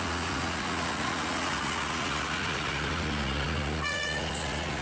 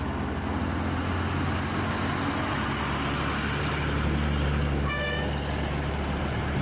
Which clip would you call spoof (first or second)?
first